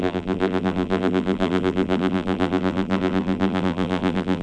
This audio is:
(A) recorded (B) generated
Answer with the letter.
B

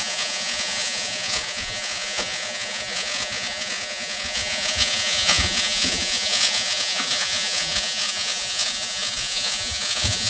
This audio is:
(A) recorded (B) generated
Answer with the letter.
B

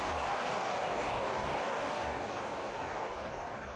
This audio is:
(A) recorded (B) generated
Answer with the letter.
B